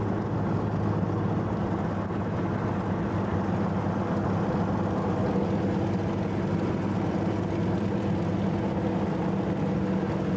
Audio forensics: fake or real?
real